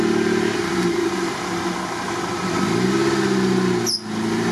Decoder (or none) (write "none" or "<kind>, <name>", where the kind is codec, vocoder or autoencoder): none